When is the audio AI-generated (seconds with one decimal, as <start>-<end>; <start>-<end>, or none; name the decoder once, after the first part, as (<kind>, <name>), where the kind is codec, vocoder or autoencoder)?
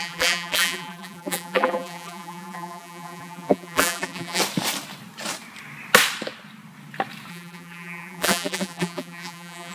0.0-4.4 (vocoder, BigVGAN v2); 7.3-9.7